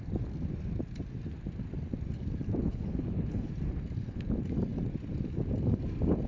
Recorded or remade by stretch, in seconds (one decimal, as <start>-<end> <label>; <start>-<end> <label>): 0.0-2.7 recorded; 2.7-3.5 remade; 3.5-6.3 recorded

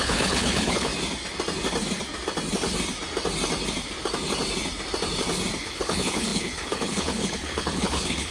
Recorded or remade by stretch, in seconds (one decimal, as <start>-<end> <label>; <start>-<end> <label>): 0.0-0.9 remade; 0.9-5.6 recorded; 5.6-8.3 remade

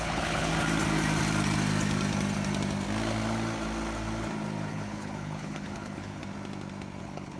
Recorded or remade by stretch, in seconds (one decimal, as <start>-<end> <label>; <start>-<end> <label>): 0.0-0.5 remade; 0.5-4.7 recorded; 4.7-6.2 remade; 6.2-7.0 recorded; 7.0-7.4 remade

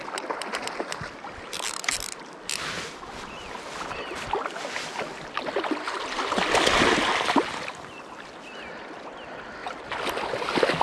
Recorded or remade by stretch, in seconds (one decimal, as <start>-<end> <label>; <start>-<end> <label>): 0.0-10.8 recorded